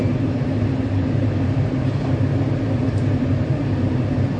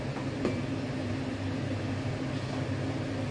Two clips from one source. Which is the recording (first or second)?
second